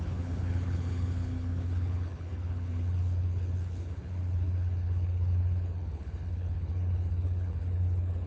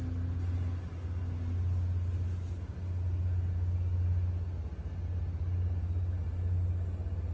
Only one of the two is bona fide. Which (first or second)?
second